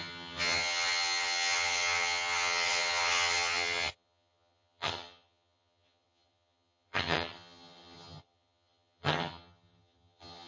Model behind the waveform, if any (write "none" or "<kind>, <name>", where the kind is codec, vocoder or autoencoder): vocoder, HiFi-GAN